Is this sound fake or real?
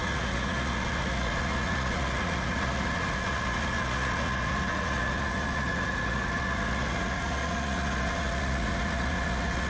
fake